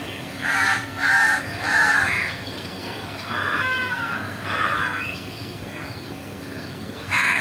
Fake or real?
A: fake